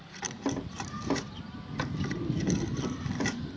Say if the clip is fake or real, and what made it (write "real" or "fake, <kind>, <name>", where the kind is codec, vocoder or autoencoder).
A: real